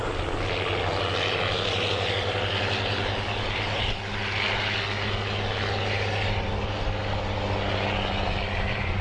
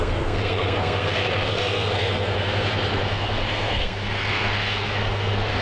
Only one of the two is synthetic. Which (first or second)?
second